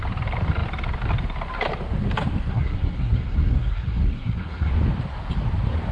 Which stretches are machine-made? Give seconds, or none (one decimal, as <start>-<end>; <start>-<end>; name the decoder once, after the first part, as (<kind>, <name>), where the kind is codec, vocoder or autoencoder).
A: 2.5-4.7 (codec, SNAC)